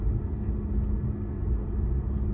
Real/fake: real